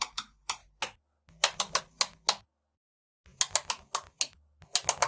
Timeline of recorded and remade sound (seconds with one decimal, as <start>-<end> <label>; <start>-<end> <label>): 0.0-5.1 recorded